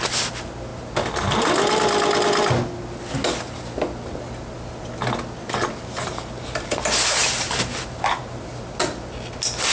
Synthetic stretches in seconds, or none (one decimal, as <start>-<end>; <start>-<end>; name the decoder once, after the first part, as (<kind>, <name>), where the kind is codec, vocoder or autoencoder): none